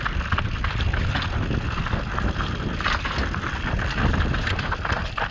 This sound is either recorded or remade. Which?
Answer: recorded